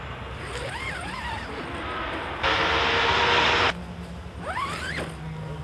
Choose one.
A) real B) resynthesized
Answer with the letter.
A